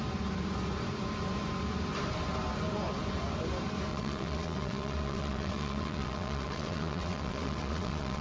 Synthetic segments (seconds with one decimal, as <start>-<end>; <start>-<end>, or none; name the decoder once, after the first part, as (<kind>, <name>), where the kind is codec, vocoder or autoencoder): 3.9-8.2 (vocoder, WaveNeXt)